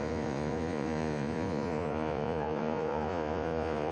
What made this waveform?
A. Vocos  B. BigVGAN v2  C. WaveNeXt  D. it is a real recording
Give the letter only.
A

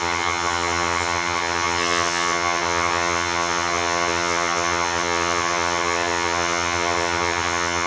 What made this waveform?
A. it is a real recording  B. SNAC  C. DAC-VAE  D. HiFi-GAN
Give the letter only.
D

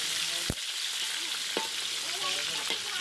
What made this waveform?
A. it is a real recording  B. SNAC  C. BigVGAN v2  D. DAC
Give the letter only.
A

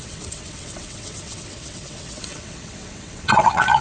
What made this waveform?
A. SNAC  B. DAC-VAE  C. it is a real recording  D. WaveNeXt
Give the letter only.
D